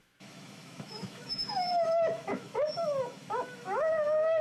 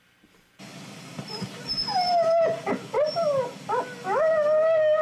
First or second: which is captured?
second